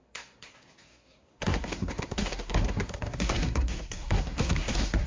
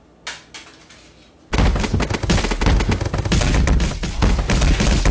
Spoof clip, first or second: first